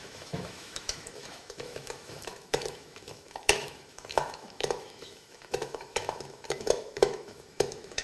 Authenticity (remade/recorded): remade